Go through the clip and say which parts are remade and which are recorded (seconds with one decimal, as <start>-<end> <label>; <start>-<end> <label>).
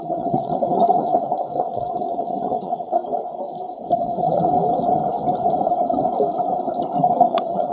0.0-3.0 remade; 3.0-4.0 recorded; 4.0-4.5 remade; 4.5-7.2 recorded; 7.2-7.7 remade